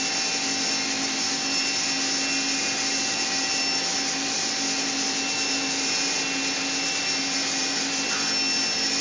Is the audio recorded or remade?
recorded